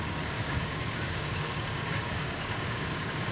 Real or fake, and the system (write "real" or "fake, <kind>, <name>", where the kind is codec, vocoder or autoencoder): fake, codec, DAC